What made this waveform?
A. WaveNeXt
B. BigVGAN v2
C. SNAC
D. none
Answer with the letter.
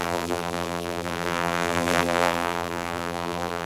B